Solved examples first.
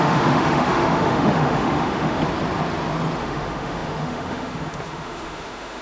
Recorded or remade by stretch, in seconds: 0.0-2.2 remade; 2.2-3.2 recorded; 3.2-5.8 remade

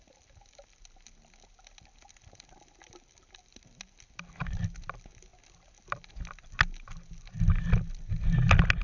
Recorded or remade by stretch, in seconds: 0.0-8.8 recorded

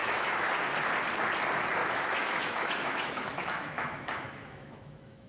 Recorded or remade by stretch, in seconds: 0.0-0.5 remade; 0.5-1.8 recorded; 1.8-5.3 remade

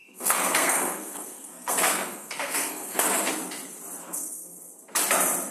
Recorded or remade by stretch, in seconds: 0.0-3.3 remade; 3.3-4.0 recorded; 4.0-4.7 remade; 4.7-5.5 recorded

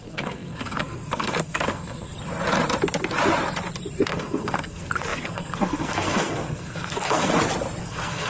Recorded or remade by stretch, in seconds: 0.0-2.1 remade; 2.1-4.0 recorded; 4.0-7.3 remade; 7.3-7.8 recorded; 7.8-8.3 remade